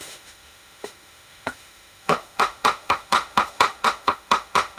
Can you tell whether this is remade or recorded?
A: remade